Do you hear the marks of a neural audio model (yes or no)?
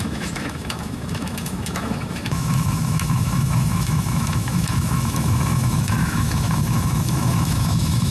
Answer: yes